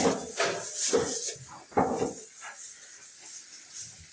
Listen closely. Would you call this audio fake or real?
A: real